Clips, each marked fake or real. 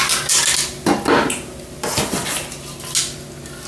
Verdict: real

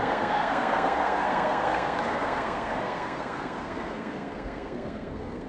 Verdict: fake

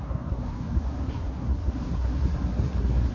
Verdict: fake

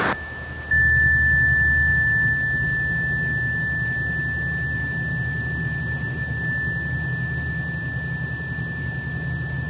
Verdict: real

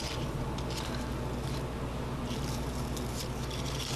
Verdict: real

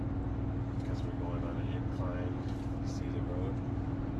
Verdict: real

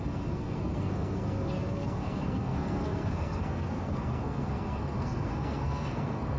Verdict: fake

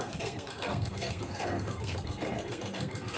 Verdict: fake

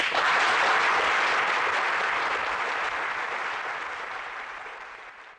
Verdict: real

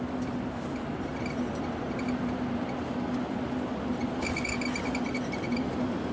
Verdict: real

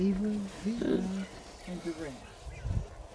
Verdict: real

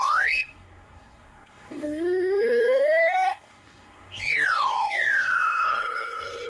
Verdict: fake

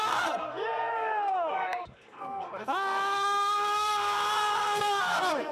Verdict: fake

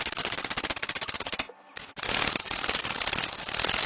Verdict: real